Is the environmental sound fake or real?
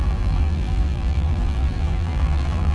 fake